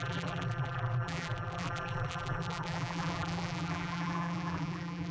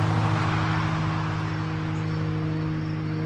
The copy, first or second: first